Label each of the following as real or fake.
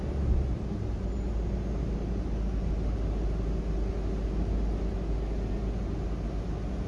real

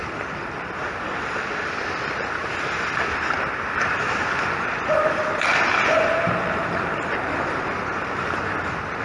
real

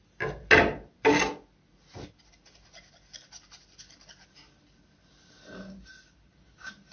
real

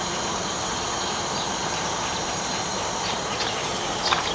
real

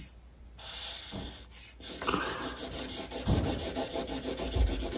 real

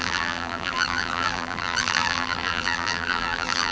fake